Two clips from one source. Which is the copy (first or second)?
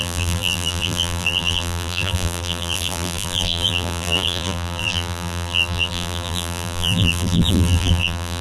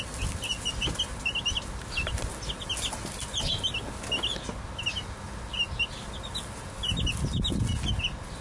first